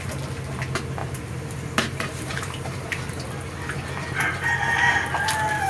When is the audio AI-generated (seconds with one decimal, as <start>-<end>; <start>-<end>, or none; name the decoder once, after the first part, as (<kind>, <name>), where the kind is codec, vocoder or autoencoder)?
1.0-3.3 (vocoder, BigVGAN v2)